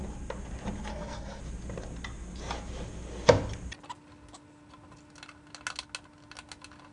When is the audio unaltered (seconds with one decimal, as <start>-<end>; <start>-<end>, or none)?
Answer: 0.0-0.9; 1.4-6.9